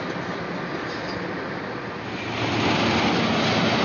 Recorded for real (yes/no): yes